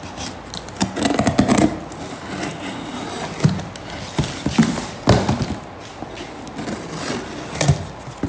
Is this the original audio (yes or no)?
yes